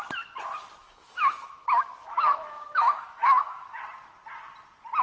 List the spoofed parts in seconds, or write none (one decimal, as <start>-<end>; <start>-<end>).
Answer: 0.8-3.8